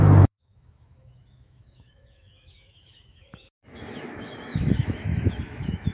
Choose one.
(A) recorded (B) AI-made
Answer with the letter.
B